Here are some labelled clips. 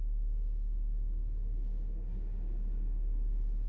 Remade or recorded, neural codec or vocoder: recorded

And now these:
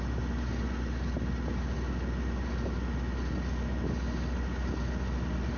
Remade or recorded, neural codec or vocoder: recorded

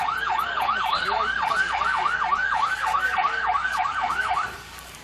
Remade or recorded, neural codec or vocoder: remade, codec, DAC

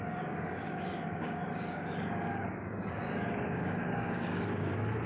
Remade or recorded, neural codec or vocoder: remade, codec, DAC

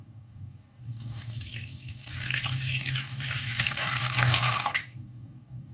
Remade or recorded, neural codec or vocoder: remade, codec, DAC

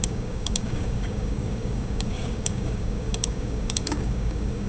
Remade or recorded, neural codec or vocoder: remade, codec, DAC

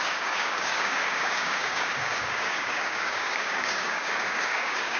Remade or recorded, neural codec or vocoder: remade, codec, DAC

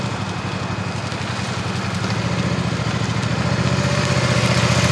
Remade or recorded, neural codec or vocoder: recorded